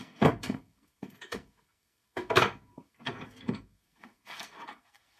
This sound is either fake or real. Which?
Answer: fake